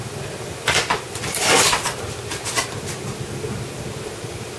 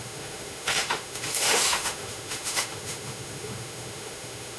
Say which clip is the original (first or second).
first